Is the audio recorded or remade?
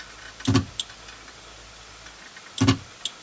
recorded